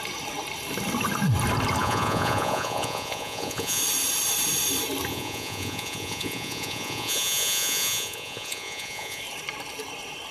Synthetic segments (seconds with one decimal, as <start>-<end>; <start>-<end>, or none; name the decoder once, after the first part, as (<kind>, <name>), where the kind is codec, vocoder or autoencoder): 1.8-3.8 (vocoder, Vocos); 5.1-9.2

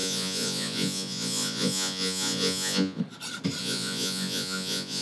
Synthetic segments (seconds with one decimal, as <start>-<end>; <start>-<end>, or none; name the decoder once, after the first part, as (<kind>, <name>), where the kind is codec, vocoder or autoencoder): 0.0-3.0 (vocoder, Vocos); 3.6-5.0

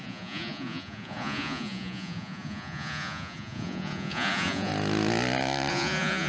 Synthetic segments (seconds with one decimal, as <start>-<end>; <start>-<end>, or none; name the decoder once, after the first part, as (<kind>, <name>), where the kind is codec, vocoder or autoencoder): 0.0-4.7 (vocoder, Vocos); 5.7-6.3

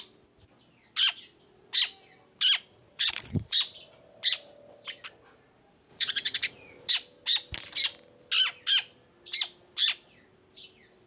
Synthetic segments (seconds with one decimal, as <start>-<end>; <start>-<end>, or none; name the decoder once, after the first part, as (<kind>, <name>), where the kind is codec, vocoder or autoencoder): 2.8-3.6 (vocoder, Vocos); 5.9-6.9

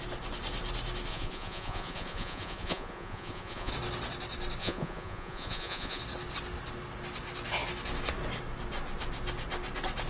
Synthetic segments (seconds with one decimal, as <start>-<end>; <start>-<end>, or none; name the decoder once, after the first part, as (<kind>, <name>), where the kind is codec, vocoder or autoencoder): 1.1-3.7 (vocoder, Vocos); 4.6-6.0